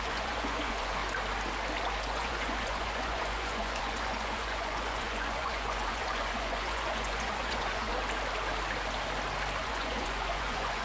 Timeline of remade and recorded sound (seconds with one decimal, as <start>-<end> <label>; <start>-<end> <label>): 0.0-1.0 remade; 1.0-2.0 recorded; 2.0-7.9 remade; 7.9-9.6 recorded; 9.6-10.8 remade